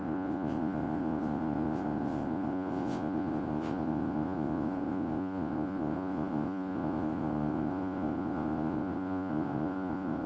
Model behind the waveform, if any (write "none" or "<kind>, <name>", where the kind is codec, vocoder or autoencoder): vocoder, Vocos